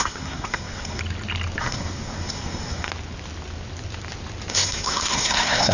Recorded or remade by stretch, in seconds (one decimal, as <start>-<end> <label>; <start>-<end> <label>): 0.0-1.0 remade; 1.0-1.6 recorded; 1.6-2.9 remade; 2.9-4.5 recorded; 4.5-5.7 remade